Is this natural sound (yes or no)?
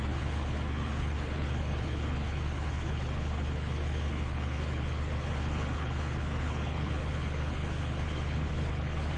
no